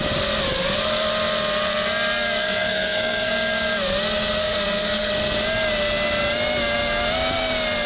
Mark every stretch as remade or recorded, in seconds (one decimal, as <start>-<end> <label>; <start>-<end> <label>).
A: 0.0-2.4 recorded; 2.4-3.3 remade; 3.3-4.4 recorded; 4.4-5.1 remade; 5.1-7.9 recorded